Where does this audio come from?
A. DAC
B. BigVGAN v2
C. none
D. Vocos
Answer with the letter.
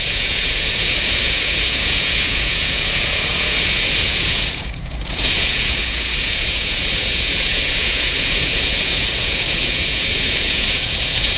D